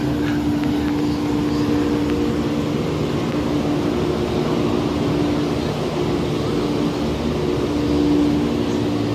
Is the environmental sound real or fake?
real